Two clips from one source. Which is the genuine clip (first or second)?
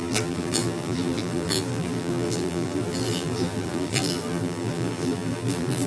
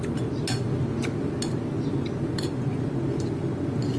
second